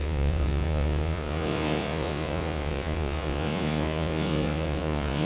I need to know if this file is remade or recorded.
remade